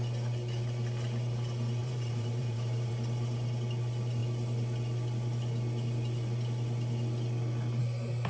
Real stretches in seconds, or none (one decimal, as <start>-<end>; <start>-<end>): 0.0-1.8; 2.9-8.3

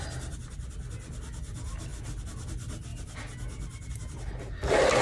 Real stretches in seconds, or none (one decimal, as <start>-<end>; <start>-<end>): 0.0-5.0

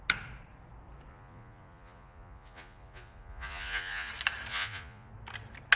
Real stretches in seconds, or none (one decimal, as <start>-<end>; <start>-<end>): 0.0-1.1; 4.1-4.5; 5.1-5.8

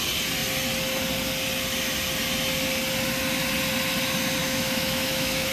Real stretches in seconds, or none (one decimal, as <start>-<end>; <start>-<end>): 0.0-4.4

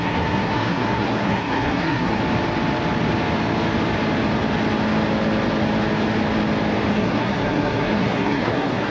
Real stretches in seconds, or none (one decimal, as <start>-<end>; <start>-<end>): 2.2-6.9

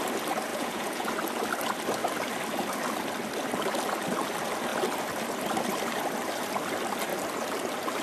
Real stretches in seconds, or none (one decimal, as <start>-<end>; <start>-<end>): 0.0-0.5; 1.1-8.0

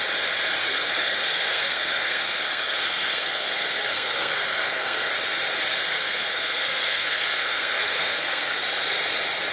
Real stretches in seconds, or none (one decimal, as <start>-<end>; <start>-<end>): 0.0-0.6; 5.1-5.9; 8.6-9.5

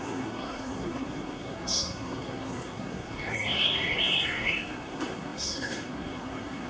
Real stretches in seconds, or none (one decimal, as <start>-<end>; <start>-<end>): none